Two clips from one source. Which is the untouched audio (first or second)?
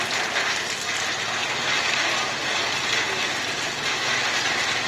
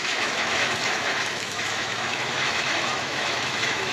first